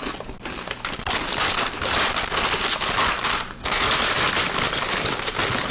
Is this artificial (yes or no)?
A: no